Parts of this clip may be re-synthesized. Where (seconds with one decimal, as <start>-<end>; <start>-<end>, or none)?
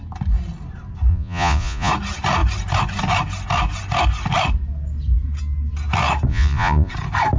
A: 1.1-1.9; 6.3-6.9